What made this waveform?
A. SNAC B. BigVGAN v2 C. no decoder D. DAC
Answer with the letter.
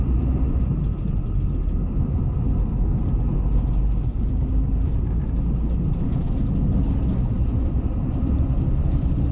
C